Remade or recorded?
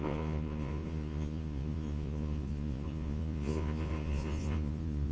remade